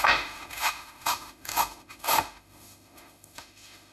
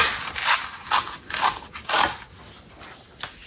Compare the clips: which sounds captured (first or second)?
second